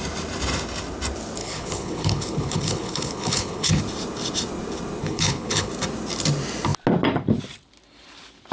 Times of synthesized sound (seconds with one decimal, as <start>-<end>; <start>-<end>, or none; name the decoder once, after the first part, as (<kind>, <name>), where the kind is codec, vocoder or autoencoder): 1.4-3.8 (codec, HILCodec); 5.0-5.7